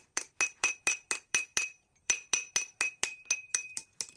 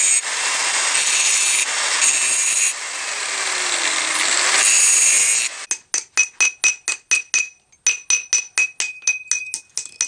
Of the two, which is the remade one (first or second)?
first